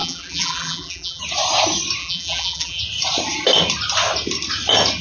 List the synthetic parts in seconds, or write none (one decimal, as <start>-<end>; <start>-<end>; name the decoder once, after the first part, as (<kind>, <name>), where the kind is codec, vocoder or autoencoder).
0.0-1.2 (vocoder, BigVGAN v2); 2.0-2.8

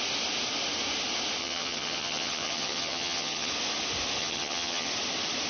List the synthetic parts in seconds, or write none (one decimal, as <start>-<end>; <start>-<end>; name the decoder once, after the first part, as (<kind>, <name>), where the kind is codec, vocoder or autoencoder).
1.4-3.5 (vocoder, HiFi-GAN); 4.2-4.9